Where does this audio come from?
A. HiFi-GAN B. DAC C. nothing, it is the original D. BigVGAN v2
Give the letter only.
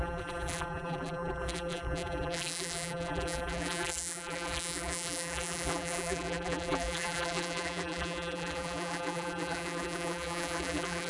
D